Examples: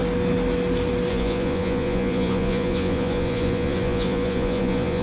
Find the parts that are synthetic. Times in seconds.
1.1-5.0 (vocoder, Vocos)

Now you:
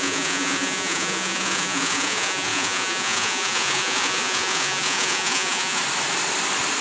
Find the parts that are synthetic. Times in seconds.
0.0-5.8 (vocoder, Vocos)

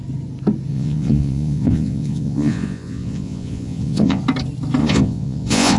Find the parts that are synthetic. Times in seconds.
0.7-4.2 (vocoder, Vocos); 4.8-5.8

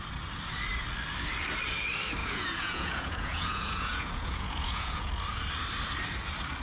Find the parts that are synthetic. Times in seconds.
2.2-5.1 (vocoder, Vocos)

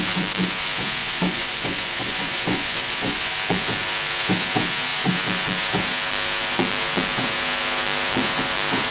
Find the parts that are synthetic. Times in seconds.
1.0-3.3 (vocoder, Vocos)

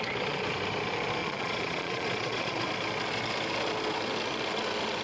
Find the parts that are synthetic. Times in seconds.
1.2-2.7 (vocoder, Vocos)

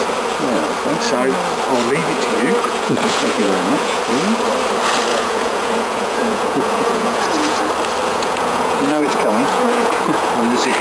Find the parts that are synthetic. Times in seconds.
2.0-4.0 (vocoder, Vocos); 5.1-7.6; 8.1-10.3